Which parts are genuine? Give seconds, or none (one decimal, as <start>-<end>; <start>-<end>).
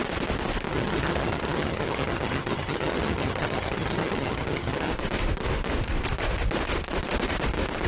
0.0-0.7; 4.9-7.9